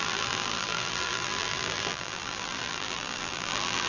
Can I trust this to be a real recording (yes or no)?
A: no